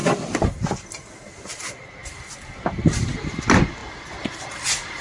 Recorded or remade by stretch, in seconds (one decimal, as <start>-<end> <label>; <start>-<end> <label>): 0.0-5.0 recorded